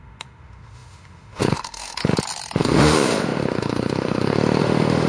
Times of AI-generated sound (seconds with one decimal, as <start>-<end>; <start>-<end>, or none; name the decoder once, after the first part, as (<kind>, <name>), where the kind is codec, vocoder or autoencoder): 0.0-2.0 (autoencoder, DAC-VAE); 2.6-5.1